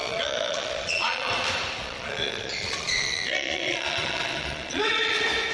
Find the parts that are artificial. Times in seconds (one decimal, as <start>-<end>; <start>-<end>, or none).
0.0-1.3; 1.8-5.1